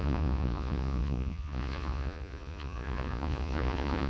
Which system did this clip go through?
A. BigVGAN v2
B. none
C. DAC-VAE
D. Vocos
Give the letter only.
D